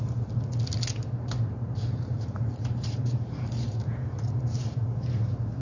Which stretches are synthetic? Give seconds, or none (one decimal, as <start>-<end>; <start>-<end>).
2.0-5.6